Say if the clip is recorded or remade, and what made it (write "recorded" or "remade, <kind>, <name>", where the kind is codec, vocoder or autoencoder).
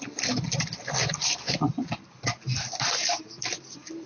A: remade, vocoder, BigVGAN v2